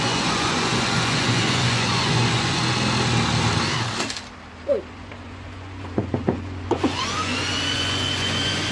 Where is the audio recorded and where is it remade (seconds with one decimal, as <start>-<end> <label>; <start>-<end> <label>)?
0.0-2.6 remade; 2.6-4.9 recorded; 4.9-8.7 remade